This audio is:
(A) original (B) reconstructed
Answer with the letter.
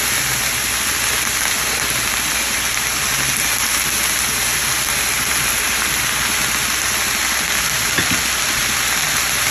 A